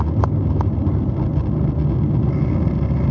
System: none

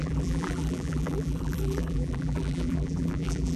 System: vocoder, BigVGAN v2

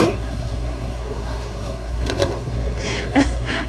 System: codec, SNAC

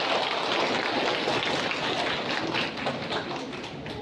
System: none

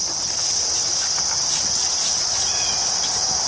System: none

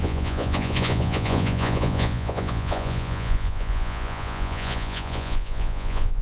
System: vocoder, Vocos